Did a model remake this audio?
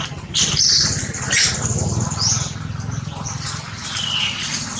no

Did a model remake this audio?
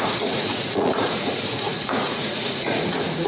yes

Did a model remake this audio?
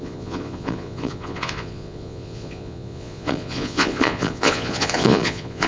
yes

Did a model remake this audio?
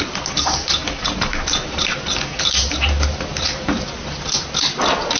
no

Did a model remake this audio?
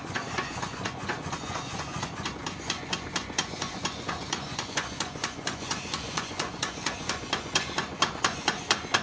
yes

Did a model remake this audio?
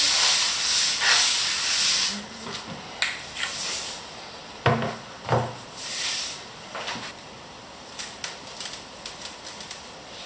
no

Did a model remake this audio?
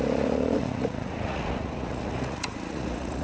yes